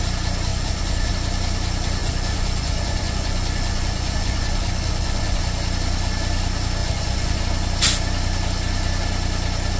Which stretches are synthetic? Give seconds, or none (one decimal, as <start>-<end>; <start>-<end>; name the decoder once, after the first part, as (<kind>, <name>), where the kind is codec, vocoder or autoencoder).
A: 0.5-1.1 (vocoder, Vocos); 2.0-5.4; 6.8-7.4